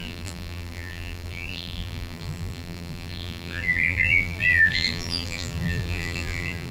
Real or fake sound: fake